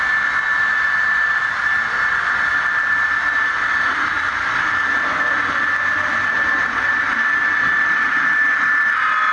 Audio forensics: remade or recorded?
recorded